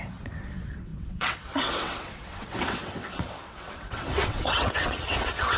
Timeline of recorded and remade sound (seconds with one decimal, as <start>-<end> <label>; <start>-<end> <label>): 0.0-5.6 remade